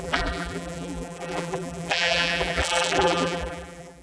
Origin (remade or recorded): remade